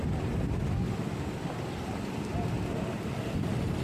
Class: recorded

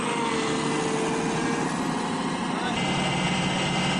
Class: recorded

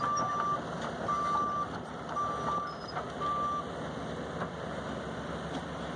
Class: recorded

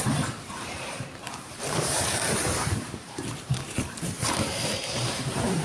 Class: remade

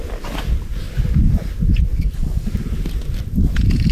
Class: recorded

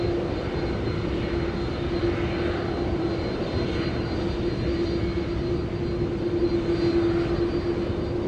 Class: recorded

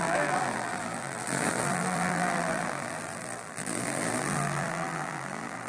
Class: remade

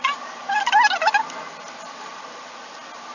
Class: recorded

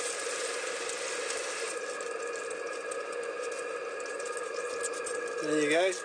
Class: recorded